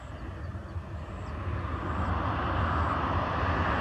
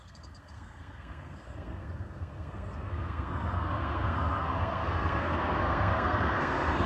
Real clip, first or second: first